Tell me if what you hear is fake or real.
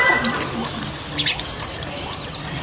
real